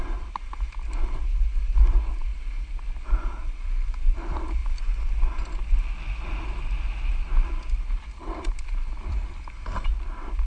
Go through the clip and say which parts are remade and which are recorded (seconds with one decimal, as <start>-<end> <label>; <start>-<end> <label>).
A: 0.0-2.3 remade; 2.3-3.4 recorded; 3.4-4.6 remade; 4.6-8.0 recorded; 8.0-10.5 remade